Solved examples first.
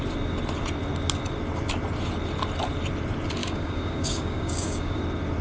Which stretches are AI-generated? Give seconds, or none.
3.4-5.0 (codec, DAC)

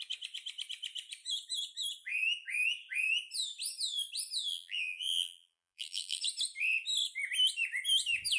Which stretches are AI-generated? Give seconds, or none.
4.5-6.2 (vocoder, BigVGAN v2)

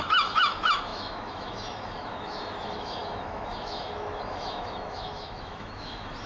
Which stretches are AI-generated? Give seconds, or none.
0.0-6.3 (autoencoder, DAC-VAE)

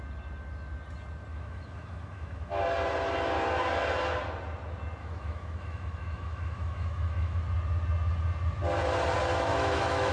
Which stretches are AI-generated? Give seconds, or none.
1.3-2.6 (autoencoder, DAC-VAE); 5.0-7.4; 9.3-10.1

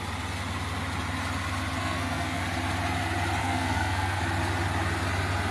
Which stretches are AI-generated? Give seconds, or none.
1.8-2.4 (codec, SNAC); 3.4-4.2

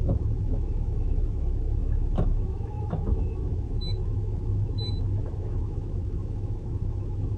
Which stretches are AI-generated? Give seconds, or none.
0.0-7.4 (autoencoder, DAC-VAE)